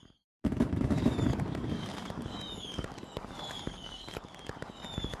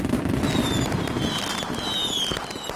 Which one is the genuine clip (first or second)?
second